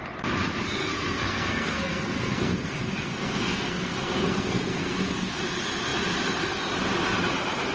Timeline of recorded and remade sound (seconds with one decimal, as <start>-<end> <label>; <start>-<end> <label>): 0.0-0.8 recorded; 0.8-5.4 remade; 5.4-7.7 recorded